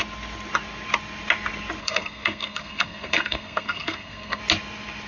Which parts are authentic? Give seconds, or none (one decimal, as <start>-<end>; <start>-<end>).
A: 0.0-1.8; 4.4-5.1